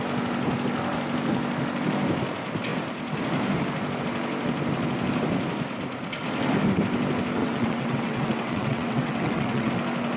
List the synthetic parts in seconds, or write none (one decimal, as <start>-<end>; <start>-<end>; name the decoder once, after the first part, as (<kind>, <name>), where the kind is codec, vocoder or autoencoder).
7.4-9.7 (vocoder, WaveNeXt)